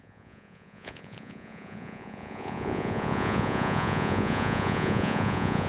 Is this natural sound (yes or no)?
no